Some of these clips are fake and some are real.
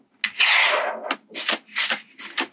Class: real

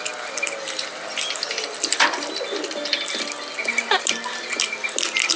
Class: real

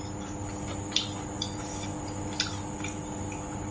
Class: real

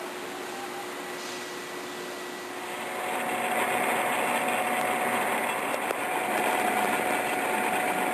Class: real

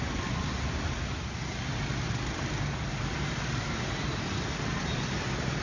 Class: real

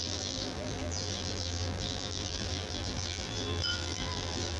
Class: fake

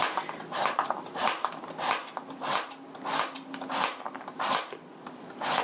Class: real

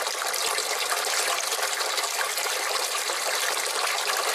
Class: real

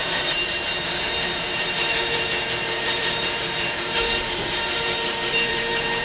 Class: fake